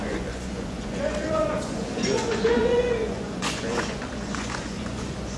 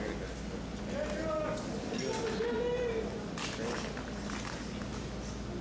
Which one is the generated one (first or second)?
first